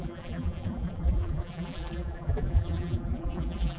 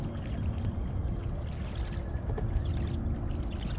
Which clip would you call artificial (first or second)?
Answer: first